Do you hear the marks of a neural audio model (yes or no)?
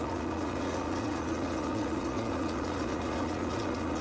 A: yes